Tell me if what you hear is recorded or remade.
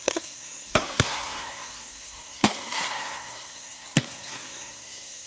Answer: remade